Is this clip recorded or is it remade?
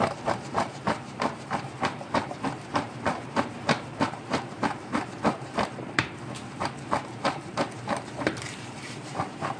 remade